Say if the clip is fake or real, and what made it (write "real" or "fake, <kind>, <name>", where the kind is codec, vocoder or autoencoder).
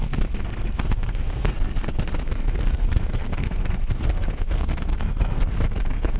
fake, codec, SNAC